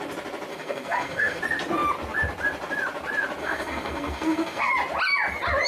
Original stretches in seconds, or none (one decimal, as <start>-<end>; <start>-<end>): 0.0-0.5; 1.4-3.4; 4.7-5.7